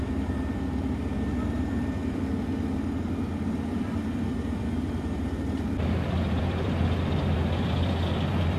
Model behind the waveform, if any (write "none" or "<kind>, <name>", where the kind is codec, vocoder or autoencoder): vocoder, BigVGAN v2